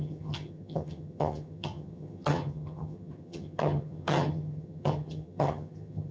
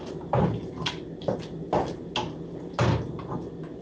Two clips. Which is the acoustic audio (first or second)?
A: second